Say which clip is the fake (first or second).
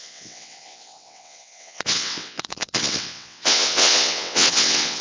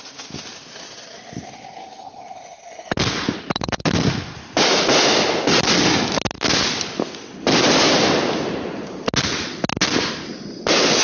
first